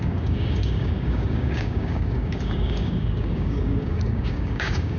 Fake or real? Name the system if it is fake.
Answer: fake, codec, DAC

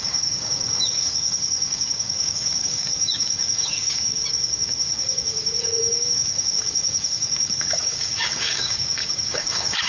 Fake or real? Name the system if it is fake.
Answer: fake, codec, DAC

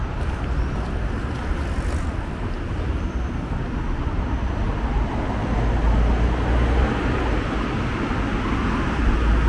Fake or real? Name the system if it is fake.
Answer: real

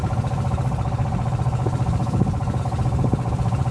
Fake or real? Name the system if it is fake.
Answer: real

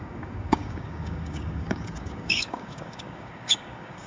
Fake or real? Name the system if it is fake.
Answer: fake, codec, DAC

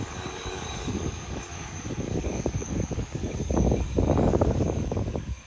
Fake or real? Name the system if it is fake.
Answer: fake, codec, DAC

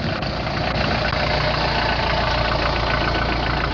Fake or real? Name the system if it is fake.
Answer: real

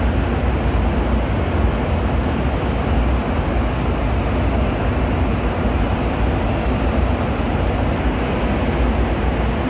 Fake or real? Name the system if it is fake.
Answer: real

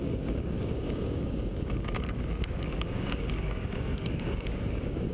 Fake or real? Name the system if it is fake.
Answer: fake, codec, DAC